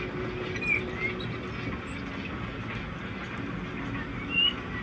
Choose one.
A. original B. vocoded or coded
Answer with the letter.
A